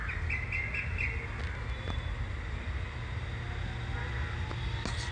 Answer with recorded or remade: recorded